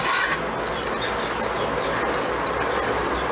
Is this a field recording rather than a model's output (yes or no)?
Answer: yes